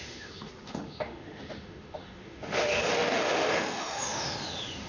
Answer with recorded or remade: remade